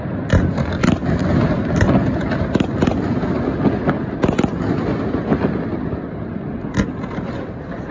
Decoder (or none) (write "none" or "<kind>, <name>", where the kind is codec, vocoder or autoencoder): none